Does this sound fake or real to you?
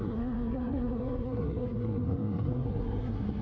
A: fake